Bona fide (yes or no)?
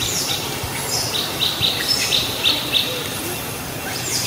yes